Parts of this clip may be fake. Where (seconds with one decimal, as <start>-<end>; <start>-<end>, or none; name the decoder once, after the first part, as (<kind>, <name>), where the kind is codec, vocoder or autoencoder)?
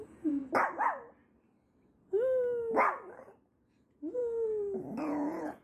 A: 0.0-0.4 (vocoder, Vocos); 3.8-4.2; 5.0-5.6